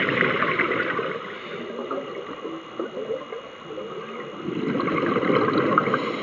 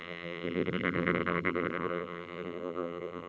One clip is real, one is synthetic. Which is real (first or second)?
first